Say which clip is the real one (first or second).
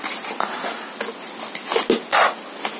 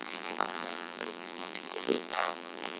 first